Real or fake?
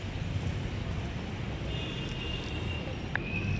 real